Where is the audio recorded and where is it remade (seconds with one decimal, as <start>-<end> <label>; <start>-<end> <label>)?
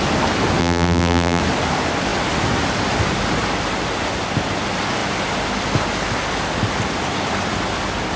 0.0-0.6 recorded; 0.6-1.4 remade; 1.4-8.2 recorded